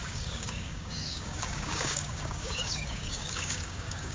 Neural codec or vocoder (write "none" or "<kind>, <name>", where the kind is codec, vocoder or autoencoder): codec, DAC